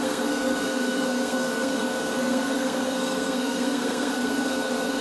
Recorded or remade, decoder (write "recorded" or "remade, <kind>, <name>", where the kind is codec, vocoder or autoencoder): remade, codec, SNAC